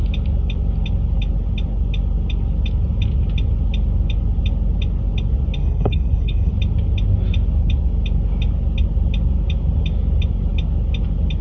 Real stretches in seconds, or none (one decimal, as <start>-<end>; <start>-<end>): 0.0-5.6; 6.5-11.4